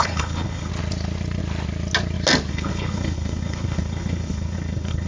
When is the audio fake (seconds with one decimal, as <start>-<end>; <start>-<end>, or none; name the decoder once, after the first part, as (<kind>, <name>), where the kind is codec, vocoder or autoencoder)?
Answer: 0.0-0.7 (codec, HILCodec); 2.5-5.1